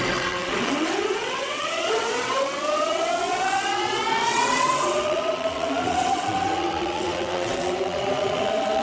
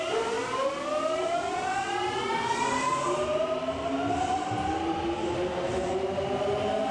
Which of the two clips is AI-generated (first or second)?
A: first